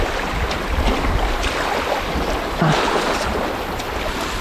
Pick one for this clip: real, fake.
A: real